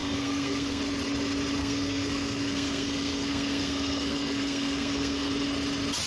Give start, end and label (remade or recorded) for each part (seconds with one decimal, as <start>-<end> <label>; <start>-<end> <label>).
0.0-0.8 remade; 0.8-1.6 recorded; 1.6-5.3 remade; 5.3-6.1 recorded